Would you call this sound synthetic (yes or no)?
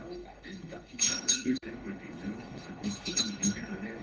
yes